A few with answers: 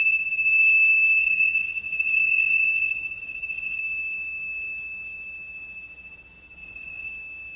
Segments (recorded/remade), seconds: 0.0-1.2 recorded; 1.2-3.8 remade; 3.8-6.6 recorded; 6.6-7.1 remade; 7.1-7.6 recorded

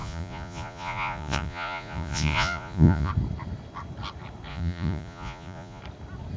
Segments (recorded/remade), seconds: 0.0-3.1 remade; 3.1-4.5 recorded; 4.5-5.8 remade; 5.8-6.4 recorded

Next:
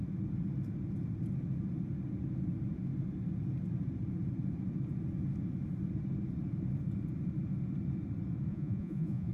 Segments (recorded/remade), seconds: 0.0-8.5 recorded; 8.5-9.3 remade

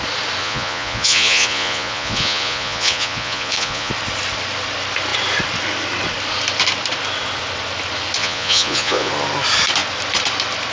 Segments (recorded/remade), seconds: 0.0-0.4 recorded; 0.4-3.9 remade; 3.9-8.2 recorded; 8.2-9.1 remade; 9.1-10.7 recorded

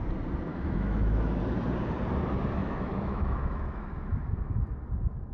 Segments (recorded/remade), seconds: 0.0-0.5 recorded; 0.5-1.4 remade; 1.4-2.6 recorded; 2.6-4.6 remade; 4.6-5.3 recorded

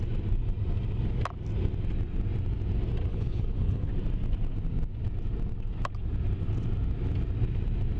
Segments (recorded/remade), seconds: 0.0-3.1 recorded; 3.1-3.9 remade; 3.9-8.0 recorded

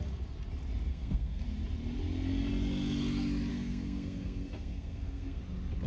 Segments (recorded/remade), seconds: 0.0-0.9 recorded; 0.9-1.4 remade; 1.4-3.5 recorded; 3.5-5.4 remade; 5.4-5.9 recorded